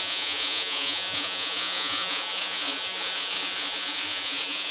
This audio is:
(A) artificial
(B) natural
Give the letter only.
A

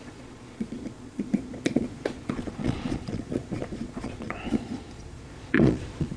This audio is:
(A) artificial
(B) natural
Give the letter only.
A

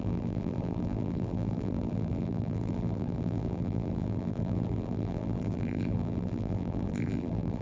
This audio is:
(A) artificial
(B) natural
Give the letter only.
A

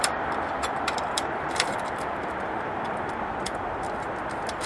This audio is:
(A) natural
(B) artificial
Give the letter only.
B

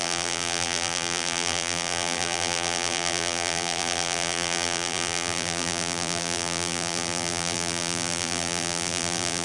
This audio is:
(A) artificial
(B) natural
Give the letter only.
A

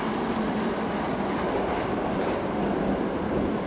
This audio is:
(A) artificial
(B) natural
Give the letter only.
B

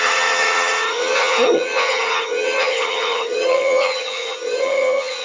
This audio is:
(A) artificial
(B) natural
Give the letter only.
A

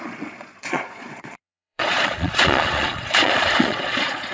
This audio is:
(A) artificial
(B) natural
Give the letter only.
A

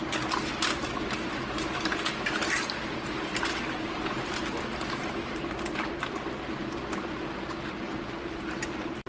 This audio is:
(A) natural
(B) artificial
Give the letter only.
A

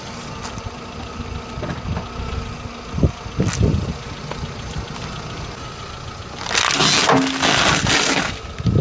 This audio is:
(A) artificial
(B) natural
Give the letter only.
B